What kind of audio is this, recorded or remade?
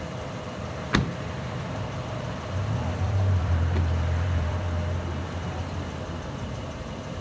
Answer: remade